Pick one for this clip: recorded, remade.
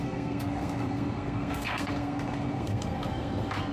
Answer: remade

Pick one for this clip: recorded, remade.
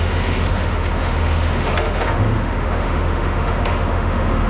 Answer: remade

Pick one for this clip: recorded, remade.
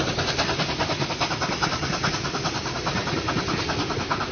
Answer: recorded